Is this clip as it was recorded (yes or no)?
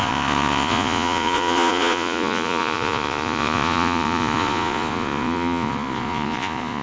no